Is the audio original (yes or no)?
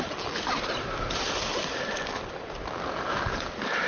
yes